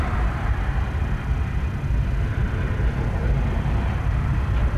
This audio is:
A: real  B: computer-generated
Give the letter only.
A